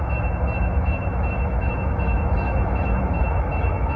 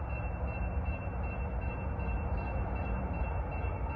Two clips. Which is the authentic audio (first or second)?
second